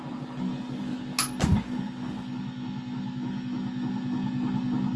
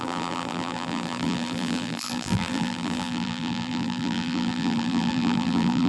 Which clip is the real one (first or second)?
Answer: first